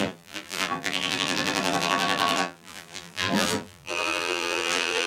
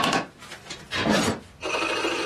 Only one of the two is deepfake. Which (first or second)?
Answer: first